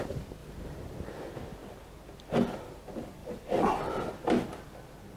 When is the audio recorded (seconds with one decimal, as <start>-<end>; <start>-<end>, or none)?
0.0-3.2; 4.1-5.2